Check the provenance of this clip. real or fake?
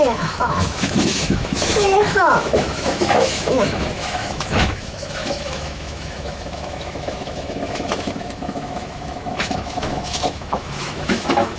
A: fake